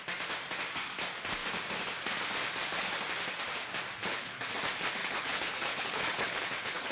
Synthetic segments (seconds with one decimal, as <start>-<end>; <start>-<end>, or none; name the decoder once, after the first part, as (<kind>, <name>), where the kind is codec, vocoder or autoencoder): 4.0-4.5 (codec, HILCodec); 5.0-6.9